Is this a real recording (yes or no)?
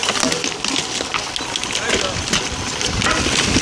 yes